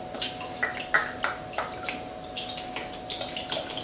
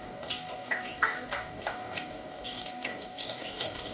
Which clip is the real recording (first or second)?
first